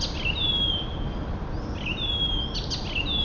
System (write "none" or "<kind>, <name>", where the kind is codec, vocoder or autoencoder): none